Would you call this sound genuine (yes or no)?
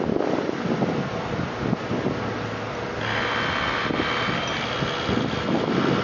yes